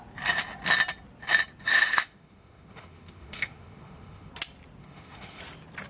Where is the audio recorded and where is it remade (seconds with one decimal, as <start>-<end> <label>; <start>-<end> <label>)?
0.0-1.6 recorded; 1.6-4.3 remade; 4.3-4.8 recorded; 4.8-5.4 remade; 5.4-5.9 recorded